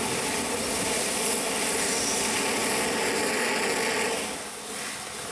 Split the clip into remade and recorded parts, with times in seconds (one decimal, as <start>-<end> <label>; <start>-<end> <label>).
0.0-5.3 recorded